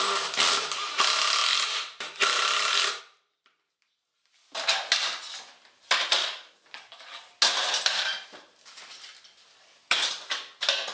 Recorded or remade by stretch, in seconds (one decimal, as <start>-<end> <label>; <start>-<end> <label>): 0.0-6.2 recorded; 6.2-7.2 remade; 7.2-9.5 recorded; 9.5-10.1 remade; 10.1-10.9 recorded